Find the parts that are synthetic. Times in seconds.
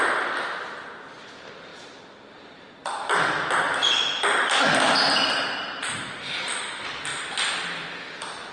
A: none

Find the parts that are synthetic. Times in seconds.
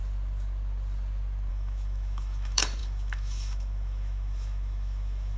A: 1.5-5.4 (autoencoder, DAC-VAE)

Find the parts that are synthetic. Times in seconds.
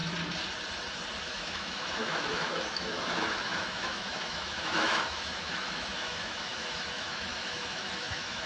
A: 1.2-8.5 (autoencoder, DAC-VAE)